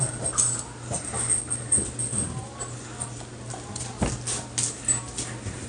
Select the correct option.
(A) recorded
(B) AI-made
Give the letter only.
A